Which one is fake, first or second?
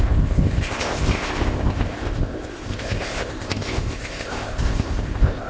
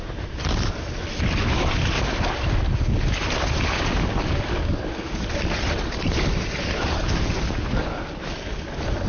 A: first